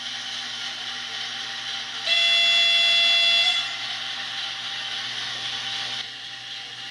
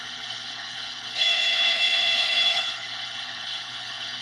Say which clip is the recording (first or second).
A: first